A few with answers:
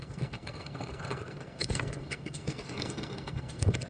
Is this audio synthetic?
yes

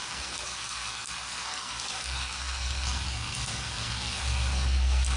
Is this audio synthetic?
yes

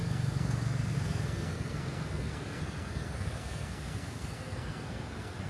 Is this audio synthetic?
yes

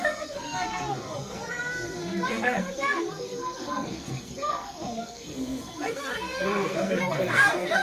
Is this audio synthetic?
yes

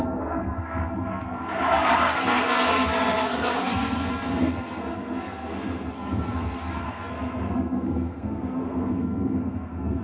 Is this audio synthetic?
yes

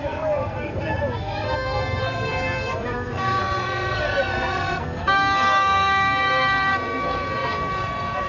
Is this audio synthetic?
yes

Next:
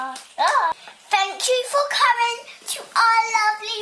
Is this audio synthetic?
no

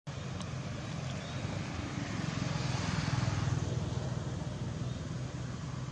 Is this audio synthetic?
no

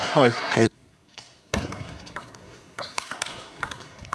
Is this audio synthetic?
yes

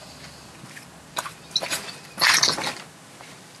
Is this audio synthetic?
no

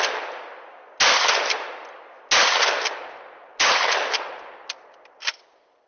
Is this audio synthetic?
no